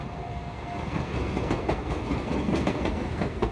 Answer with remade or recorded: remade